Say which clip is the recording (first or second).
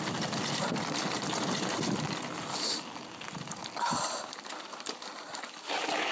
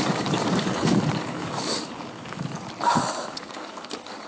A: first